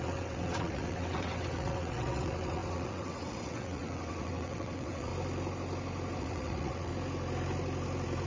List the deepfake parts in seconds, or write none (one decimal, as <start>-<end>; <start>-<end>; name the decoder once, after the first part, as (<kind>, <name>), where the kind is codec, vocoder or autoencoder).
0.0-5.1 (vocoder, WaveNeXt); 6.2-6.9